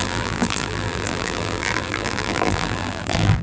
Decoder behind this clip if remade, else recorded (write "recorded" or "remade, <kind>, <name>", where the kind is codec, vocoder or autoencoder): remade, vocoder, BigVGAN v2